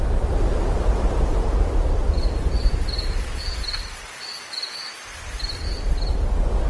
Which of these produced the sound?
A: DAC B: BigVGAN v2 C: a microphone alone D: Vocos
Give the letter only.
C